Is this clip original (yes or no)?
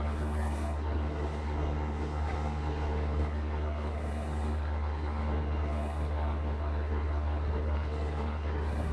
no